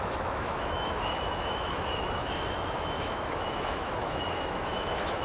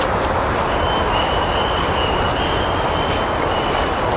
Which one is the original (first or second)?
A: second